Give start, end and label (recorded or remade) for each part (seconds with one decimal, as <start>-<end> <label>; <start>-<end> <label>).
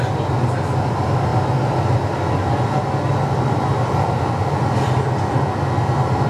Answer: 0.0-6.3 recorded